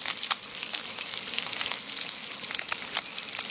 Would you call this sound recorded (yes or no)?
yes